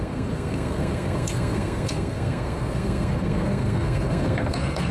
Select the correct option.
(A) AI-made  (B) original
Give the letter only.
A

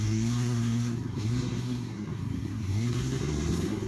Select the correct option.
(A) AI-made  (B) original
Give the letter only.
A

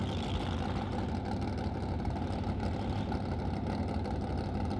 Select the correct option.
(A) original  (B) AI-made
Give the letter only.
A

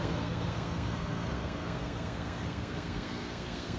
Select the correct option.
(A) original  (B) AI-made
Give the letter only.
B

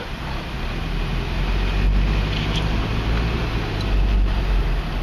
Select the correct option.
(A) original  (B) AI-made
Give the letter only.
A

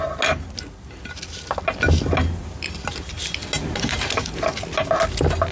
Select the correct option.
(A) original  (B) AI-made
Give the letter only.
A